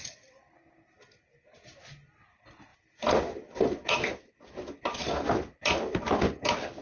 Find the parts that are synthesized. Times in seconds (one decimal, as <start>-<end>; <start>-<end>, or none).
none